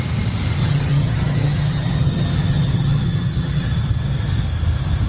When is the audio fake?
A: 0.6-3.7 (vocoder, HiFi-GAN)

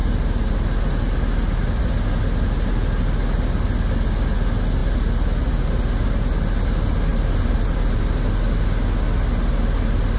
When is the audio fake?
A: 7.1-8.0 (vocoder, BigVGAN v2)

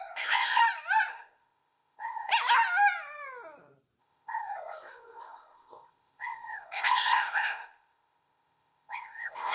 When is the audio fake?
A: 0.0-0.6 (codec, ZipCodec); 1.1-2.3; 4.0-9.5

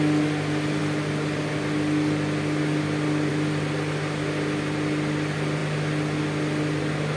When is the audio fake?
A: none